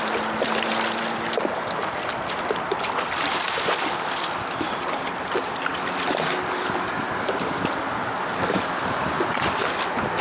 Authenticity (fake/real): real